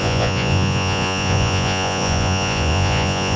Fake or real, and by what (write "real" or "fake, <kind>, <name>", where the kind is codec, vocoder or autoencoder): fake, vocoder, Vocos